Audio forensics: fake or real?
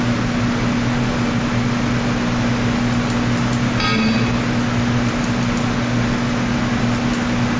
real